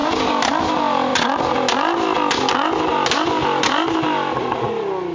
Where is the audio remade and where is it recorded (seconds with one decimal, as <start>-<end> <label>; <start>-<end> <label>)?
0.0-5.1 recorded